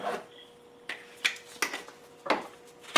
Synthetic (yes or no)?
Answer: no